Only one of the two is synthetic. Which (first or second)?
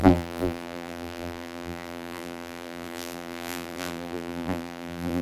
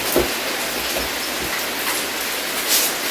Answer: first